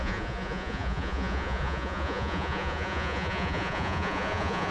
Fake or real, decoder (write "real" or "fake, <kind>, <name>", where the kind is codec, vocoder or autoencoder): fake, vocoder, Vocos